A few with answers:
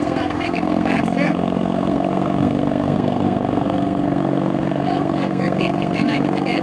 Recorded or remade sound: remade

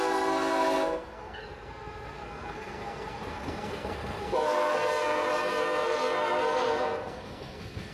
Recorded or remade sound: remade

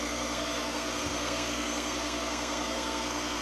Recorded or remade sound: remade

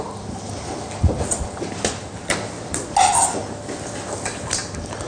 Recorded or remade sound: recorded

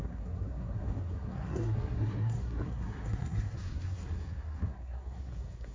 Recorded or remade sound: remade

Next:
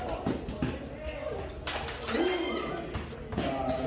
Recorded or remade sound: recorded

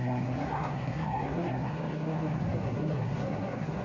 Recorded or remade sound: remade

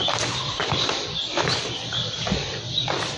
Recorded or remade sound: recorded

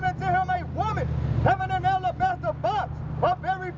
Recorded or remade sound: recorded